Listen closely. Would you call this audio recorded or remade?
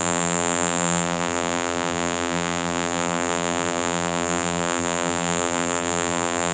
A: remade